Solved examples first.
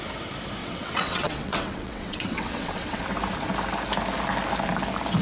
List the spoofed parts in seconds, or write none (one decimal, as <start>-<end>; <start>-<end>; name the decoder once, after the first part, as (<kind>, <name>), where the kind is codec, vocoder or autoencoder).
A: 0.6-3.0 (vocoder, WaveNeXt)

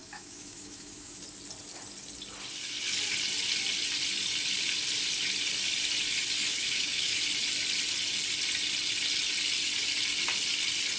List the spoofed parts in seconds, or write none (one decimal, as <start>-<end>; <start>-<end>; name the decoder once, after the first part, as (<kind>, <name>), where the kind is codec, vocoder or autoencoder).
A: 0.0-1.2 (autoencoder, DAC-VAE); 6.5-7.2

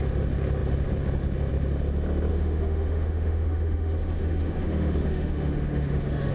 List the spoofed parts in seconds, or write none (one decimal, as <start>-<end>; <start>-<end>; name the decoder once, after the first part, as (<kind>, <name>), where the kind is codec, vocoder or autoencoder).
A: 2.3-6.3 (autoencoder, DAC-VAE)

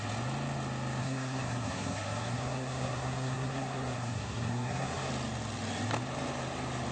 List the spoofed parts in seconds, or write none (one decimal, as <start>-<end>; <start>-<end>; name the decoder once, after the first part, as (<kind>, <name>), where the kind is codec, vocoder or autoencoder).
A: 1.0-5.1 (codec, SNAC)